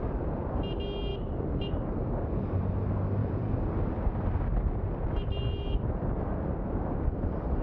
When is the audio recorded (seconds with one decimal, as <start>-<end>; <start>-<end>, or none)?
0.0-3.2; 3.7-7.6